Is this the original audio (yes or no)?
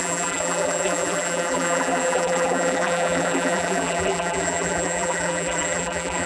no